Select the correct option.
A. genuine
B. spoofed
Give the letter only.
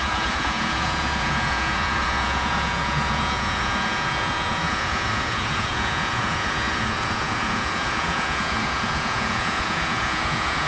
B